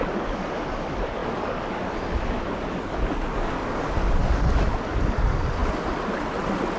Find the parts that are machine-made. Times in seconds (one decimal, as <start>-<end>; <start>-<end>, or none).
0.0-5.6